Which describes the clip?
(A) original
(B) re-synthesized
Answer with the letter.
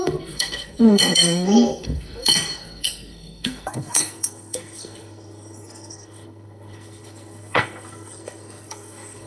B